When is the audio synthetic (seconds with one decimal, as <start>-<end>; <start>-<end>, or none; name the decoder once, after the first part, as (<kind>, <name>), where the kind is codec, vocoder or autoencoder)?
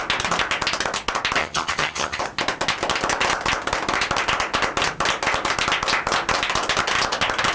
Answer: 1.4-2.2 (vocoder, HiFi-GAN)